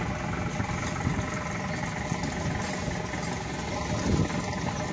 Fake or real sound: real